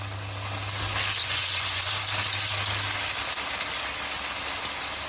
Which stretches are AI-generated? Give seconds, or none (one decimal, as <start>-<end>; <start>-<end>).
1.2-1.9